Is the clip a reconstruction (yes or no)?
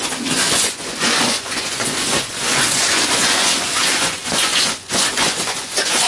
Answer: yes